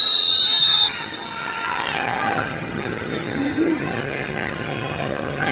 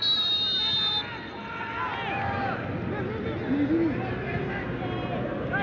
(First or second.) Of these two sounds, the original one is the second